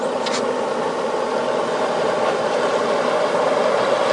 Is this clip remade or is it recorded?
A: recorded